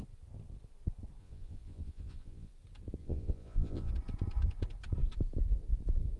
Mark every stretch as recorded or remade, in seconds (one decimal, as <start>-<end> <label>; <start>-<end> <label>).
0.0-1.2 recorded; 1.2-2.5 remade; 2.5-3.0 recorded; 3.0-3.9 remade; 3.9-6.2 recorded

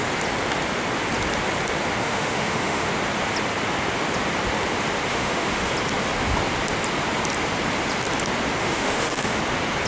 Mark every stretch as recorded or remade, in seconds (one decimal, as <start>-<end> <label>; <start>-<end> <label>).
0.0-2.0 recorded; 2.0-2.9 remade; 2.9-5.1 recorded; 5.1-5.7 remade; 5.7-8.6 recorded; 8.6-9.4 remade; 9.4-9.9 recorded

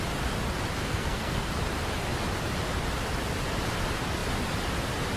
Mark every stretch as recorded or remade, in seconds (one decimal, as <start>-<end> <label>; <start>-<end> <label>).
0.0-0.8 recorded; 0.8-1.5 remade; 1.5-5.2 recorded

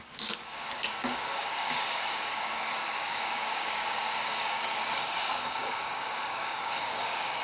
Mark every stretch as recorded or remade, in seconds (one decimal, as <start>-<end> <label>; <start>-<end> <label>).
0.0-7.4 remade

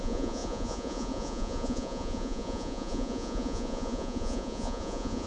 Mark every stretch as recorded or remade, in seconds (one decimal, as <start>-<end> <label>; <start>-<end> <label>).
0.0-5.3 remade

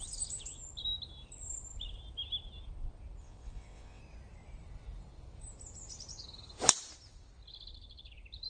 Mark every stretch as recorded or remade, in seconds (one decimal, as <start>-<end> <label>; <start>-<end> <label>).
0.0-3.2 recorded; 3.2-4.0 remade; 4.0-8.5 recorded

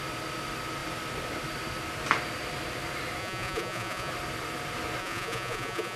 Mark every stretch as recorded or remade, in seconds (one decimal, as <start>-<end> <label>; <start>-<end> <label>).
0.0-3.2 recorded; 3.2-4.1 remade; 4.1-5.0 recorded; 5.0-6.0 remade